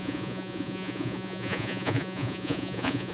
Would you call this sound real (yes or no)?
no